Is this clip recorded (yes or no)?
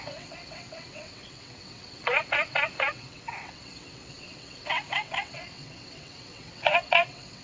no